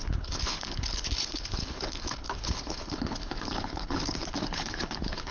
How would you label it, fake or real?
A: fake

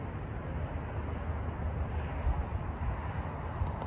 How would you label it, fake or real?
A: real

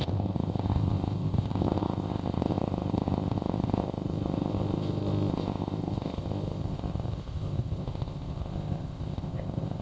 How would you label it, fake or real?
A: fake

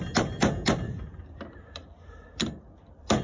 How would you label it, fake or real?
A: fake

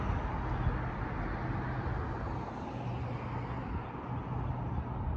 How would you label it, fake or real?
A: real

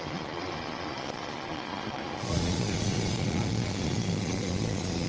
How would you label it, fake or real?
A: fake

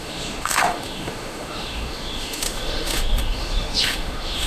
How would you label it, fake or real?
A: fake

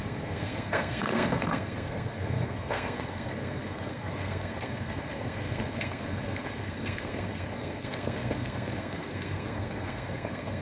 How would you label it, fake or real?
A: fake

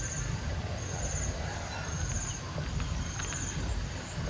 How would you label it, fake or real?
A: real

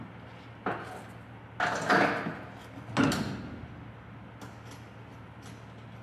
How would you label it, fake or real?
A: real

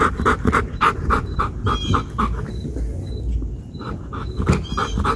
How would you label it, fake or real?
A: real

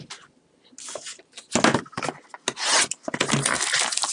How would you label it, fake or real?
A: real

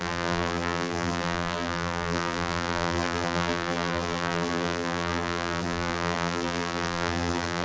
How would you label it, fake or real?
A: fake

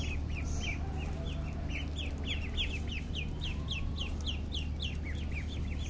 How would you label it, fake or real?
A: real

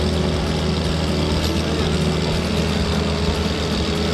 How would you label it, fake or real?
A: real